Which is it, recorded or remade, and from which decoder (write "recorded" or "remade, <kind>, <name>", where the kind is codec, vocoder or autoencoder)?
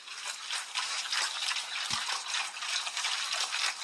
recorded